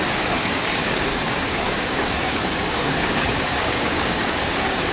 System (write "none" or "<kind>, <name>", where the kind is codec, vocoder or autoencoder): codec, DAC